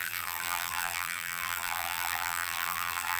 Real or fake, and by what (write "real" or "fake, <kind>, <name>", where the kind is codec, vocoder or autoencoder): fake, vocoder, BigVGAN v2